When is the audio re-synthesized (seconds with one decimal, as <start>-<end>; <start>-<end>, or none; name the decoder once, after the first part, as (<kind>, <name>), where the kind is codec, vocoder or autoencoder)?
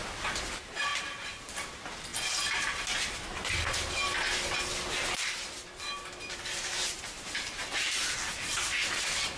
0.0-2.1 (vocoder, BigVGAN v2); 6.3-9.4